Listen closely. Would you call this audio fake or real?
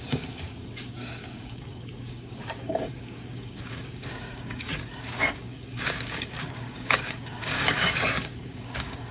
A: fake